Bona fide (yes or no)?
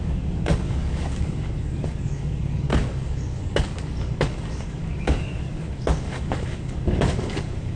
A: no